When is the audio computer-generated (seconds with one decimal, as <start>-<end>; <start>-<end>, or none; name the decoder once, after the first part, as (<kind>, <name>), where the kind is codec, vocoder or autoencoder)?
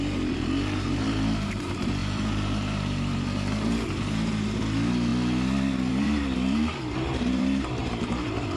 0.0-5.1 (vocoder, BigVGAN v2); 5.9-8.6